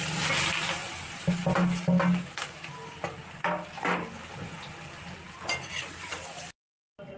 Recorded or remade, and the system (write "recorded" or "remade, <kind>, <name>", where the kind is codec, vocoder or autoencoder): recorded